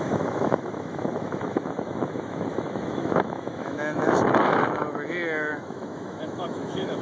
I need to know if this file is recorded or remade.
remade